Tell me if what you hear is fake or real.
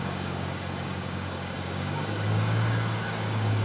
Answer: fake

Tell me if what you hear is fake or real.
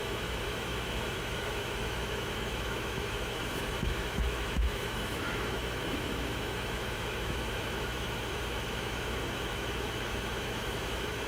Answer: fake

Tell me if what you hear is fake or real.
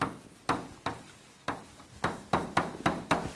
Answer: real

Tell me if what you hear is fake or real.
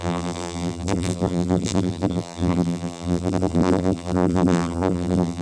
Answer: fake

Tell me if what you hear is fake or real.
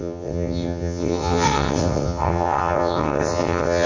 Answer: fake